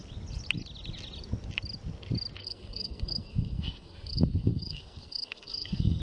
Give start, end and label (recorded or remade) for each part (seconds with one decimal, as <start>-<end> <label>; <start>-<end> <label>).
0.0-2.4 recorded; 2.4-6.0 remade